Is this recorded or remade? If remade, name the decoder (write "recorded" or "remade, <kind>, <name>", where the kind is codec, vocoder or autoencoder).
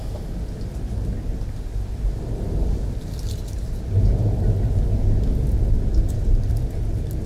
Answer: recorded